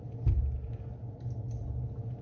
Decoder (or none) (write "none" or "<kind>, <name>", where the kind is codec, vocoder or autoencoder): none